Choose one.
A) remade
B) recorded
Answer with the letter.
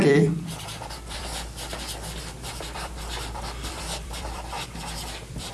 A